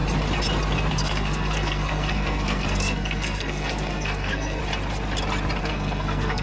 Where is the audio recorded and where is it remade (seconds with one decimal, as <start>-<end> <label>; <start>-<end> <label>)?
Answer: 0.0-0.9 recorded; 0.9-4.6 remade; 4.6-5.6 recorded; 5.6-6.4 remade